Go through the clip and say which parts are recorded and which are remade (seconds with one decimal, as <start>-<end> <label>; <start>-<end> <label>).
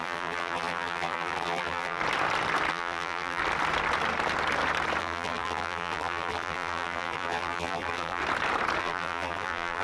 0.0-2.0 remade; 2.0-2.7 recorded; 2.7-3.4 remade; 3.4-5.0 recorded; 5.0-8.2 remade; 8.2-8.8 recorded; 8.8-9.8 remade